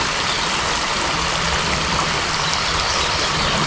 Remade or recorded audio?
recorded